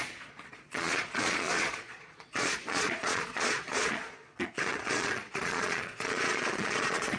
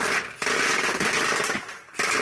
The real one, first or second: second